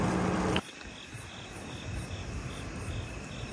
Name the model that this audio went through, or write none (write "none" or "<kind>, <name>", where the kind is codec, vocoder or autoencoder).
none